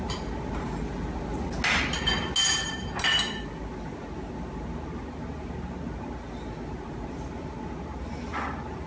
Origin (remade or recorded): recorded